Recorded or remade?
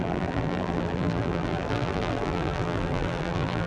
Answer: remade